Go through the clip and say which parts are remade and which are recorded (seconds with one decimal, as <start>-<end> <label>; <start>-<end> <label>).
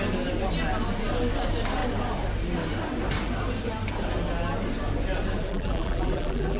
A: 0.0-5.5 recorded; 5.5-6.6 remade